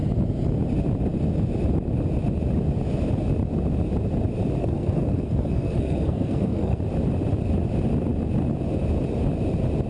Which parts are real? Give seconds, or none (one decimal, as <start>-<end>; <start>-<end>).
0.0-4.6; 6.8-9.9